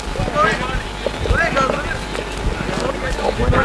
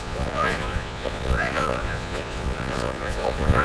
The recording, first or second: first